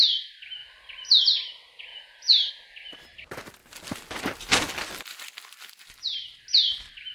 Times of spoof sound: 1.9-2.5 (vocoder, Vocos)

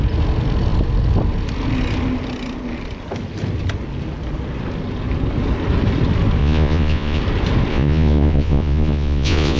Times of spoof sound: 6.4-7.2 (vocoder, Vocos); 7.7-9.6

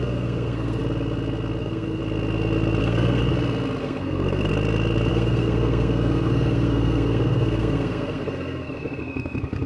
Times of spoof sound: 0.0-0.8 (codec, SNAC); 1.6-2.0; 2.8-3.2; 3.8-4.5; 5.1-9.7

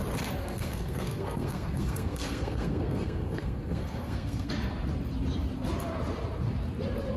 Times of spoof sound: 0.4-4.5 (codec, SNAC)

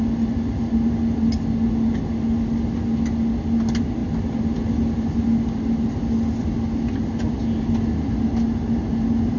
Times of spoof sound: none